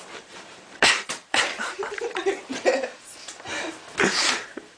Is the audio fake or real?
fake